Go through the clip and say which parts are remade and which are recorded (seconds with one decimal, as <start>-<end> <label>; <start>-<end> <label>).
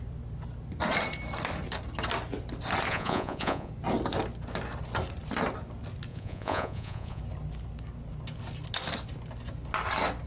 0.0-2.9 recorded; 2.9-3.7 remade; 3.7-6.1 recorded; 6.1-7.2 remade; 7.2-10.3 recorded